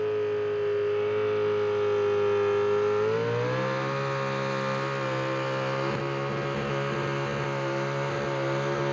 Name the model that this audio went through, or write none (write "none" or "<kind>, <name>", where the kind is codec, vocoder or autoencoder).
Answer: none